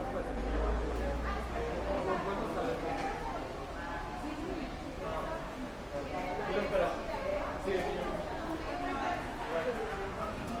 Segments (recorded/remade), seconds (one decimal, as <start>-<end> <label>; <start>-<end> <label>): 0.0-1.5 recorded; 1.5-2.0 remade; 2.0-5.4 recorded; 5.4-5.9 remade; 5.9-9.2 recorded; 9.2-10.6 remade